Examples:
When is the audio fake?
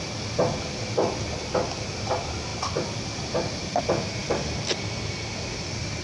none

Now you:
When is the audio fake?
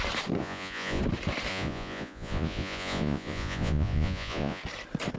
0.4-1.0; 1.5-4.6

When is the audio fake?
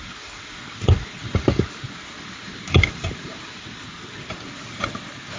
none